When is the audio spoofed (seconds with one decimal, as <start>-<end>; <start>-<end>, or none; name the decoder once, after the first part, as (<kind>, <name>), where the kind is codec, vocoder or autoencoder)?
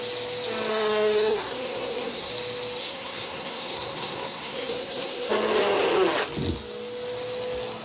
0.7-2.3 (codec, SNAC); 2.8-5.3